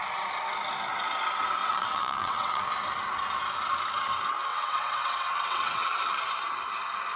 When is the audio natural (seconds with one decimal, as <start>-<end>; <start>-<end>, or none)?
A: 0.0-1.6; 2.7-4.5; 6.2-7.2